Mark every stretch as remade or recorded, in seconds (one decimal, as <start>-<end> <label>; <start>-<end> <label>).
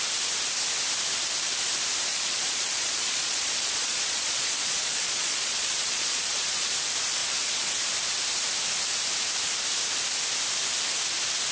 0.0-2.1 recorded; 2.1-6.7 remade; 6.7-7.2 recorded; 7.2-7.7 remade; 7.7-11.5 recorded